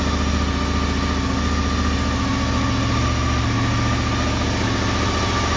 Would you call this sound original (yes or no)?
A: yes